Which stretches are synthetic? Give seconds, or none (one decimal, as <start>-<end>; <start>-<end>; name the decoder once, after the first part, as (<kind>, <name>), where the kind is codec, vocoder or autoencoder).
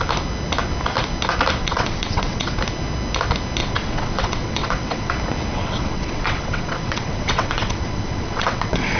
1.6-2.5 (vocoder, WaveNeXt); 3.6-5.1; 5.5-9.0